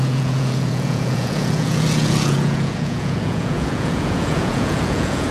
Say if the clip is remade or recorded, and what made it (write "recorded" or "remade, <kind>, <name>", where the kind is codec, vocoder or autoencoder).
remade, vocoder, Vocos